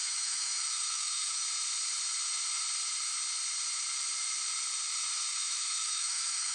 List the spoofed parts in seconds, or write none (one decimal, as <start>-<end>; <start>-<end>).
0.0-1.4; 5.3-6.5